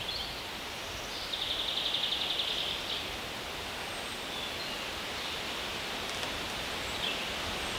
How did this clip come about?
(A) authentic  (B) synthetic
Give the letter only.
A